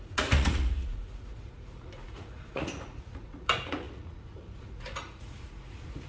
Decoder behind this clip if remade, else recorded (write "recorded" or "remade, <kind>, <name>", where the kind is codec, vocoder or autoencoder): remade, vocoder, Vocos